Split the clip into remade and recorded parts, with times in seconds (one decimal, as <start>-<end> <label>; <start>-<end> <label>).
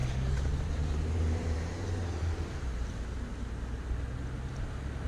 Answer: 0.0-3.0 remade; 3.0-5.1 recorded